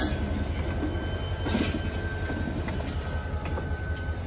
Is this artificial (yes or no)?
no